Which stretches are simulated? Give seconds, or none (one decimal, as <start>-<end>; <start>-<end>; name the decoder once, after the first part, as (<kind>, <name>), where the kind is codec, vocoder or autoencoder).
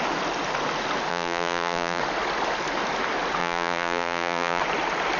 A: 1.1-2.0 (vocoder, BigVGAN v2); 3.4-4.6